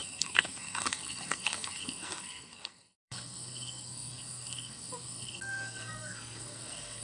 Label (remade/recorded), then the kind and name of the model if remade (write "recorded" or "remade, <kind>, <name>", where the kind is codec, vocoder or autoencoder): remade, codec, SNAC